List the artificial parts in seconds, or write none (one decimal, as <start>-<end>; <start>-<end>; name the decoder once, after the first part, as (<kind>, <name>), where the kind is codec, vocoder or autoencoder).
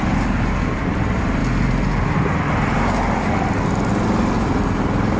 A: none